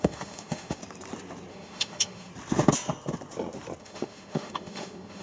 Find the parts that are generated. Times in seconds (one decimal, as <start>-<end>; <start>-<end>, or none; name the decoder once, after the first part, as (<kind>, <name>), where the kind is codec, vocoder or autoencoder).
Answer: 0.0-0.8 (autoencoder, DAC-VAE); 1.5-2.3; 3.8-5.2